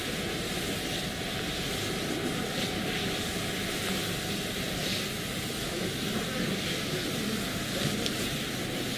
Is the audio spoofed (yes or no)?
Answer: no